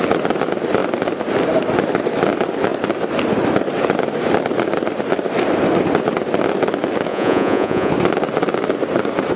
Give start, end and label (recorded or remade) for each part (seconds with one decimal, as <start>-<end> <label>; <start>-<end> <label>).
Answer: 0.0-7.1 recorded; 7.1-7.9 remade; 7.9-9.4 recorded